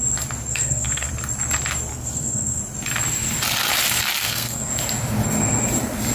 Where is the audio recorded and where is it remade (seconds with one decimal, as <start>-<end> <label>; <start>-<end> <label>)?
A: 0.0-0.5 recorded; 0.5-1.1 remade; 1.1-1.9 recorded; 1.9-2.6 remade; 2.6-4.2 recorded; 4.2-4.7 remade; 4.7-6.1 recorded

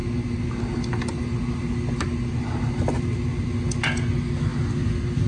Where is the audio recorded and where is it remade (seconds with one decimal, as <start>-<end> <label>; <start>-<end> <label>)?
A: 0.0-5.3 recorded